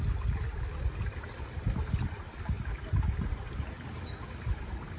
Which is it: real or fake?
real